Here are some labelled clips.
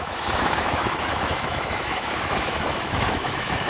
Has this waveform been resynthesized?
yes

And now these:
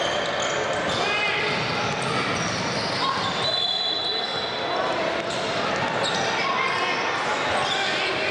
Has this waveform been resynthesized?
no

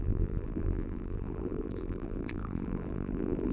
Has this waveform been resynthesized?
yes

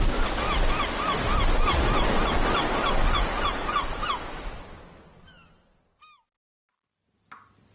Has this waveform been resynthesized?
no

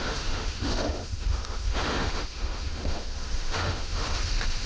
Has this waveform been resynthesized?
yes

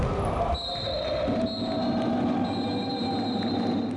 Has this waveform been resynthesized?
no